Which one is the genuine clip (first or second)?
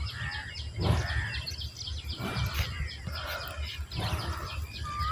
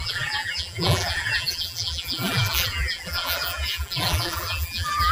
first